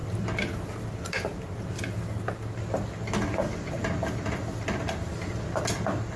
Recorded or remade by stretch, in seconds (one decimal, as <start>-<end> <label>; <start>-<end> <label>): 0.0-6.2 recorded